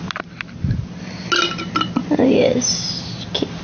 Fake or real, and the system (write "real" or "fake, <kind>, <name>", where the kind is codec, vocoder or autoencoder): real